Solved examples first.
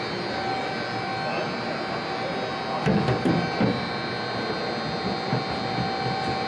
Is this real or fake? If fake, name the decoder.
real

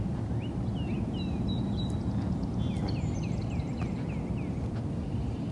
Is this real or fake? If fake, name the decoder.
real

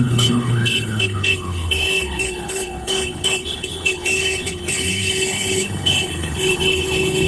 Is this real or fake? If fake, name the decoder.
fake, codec, HILCodec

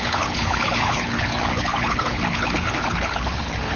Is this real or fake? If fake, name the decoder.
fake, codec, HILCodec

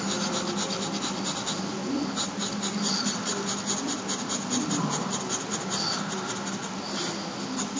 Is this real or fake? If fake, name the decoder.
real